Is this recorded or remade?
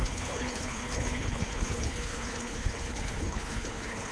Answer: remade